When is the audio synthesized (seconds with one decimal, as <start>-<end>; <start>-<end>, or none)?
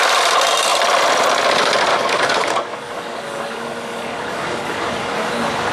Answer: 1.9-5.3